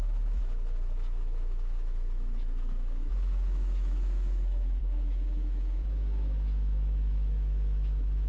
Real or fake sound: fake